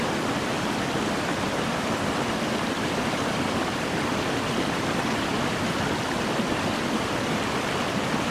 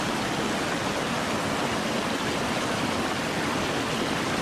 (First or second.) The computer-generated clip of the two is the first